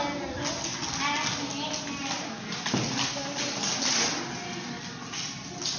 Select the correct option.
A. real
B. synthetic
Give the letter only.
A